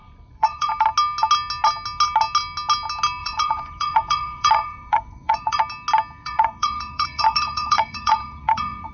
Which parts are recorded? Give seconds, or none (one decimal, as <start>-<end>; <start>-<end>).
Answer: 0.7-3.2; 5.6-6.2